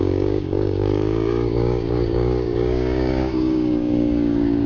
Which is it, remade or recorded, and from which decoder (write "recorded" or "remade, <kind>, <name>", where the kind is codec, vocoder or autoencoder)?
remade, codec, DAC